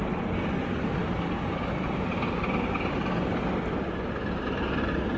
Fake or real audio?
real